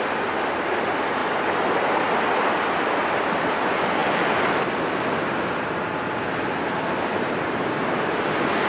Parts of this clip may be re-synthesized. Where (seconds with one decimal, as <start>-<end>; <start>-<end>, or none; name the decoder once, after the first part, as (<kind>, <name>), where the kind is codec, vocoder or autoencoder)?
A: none